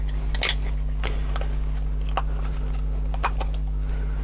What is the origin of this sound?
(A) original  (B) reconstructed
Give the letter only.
A